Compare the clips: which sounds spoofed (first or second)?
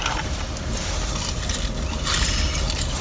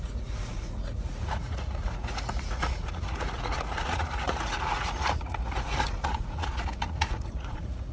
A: second